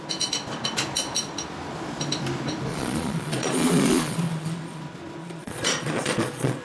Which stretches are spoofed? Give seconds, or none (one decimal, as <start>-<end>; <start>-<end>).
2.7-4.8; 5.2-6.6